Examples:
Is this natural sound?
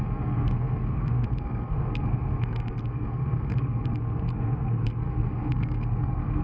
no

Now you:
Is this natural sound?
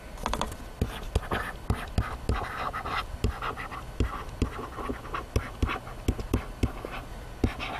yes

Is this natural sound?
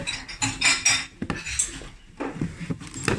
yes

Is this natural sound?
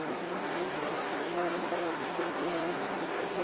no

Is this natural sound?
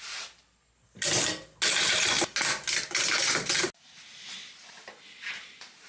yes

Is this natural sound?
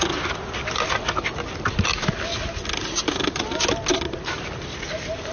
yes